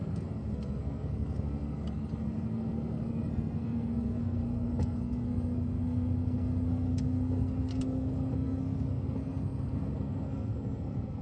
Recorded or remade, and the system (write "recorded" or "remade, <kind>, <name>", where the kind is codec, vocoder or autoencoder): remade, codec, SNAC